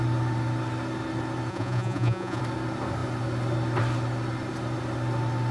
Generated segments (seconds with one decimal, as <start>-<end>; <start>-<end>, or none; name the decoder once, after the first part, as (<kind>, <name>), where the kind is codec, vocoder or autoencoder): 1.5-2.4 (vocoder, Vocos)